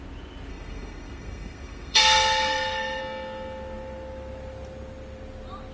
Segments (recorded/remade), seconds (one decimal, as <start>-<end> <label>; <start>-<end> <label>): 0.0-0.5 recorded; 0.5-3.0 remade; 3.0-5.7 recorded